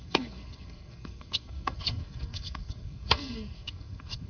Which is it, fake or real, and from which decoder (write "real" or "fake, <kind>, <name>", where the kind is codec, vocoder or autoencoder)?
fake, codec, SNAC